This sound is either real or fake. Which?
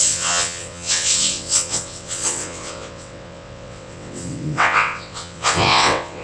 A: fake